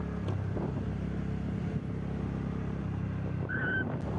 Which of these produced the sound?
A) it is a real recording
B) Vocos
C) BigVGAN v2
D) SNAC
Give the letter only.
A